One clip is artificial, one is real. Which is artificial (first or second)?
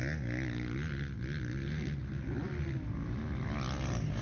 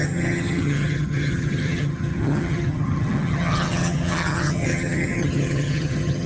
second